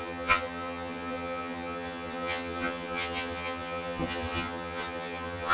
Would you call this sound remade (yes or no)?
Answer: yes